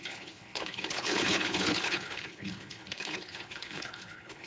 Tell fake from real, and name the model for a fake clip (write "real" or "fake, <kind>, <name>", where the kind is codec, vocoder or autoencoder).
fake, codec, HILCodec